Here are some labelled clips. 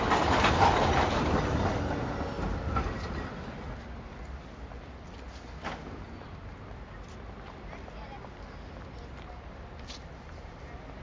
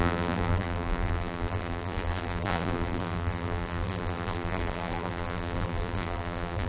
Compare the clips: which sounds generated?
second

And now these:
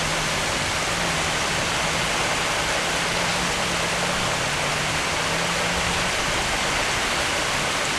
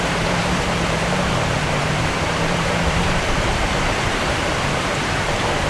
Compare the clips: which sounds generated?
second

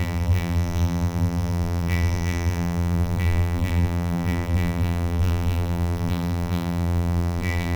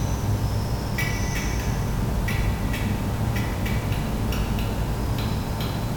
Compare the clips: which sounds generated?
first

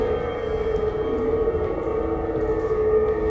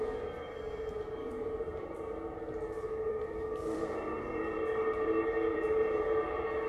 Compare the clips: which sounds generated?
second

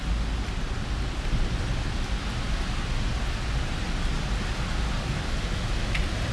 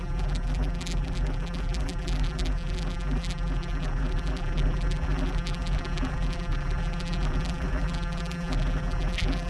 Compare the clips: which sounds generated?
second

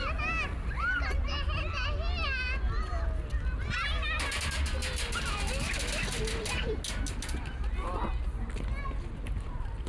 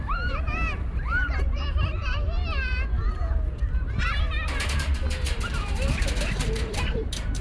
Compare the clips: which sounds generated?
second